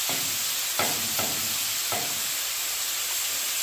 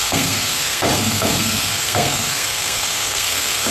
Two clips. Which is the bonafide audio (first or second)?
first